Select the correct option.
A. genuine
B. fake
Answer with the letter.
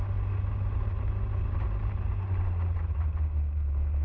A